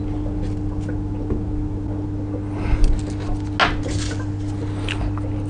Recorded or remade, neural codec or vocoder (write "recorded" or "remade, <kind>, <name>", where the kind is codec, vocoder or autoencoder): recorded